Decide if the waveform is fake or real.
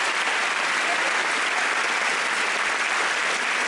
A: real